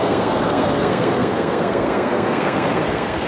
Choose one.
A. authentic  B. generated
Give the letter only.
B